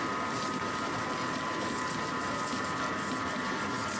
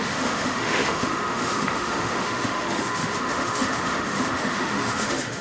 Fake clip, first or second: second